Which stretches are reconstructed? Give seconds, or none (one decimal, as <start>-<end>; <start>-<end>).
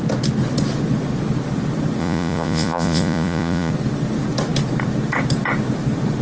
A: 2.0-3.7